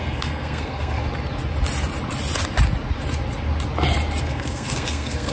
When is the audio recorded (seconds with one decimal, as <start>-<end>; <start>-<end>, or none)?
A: 1.0-4.2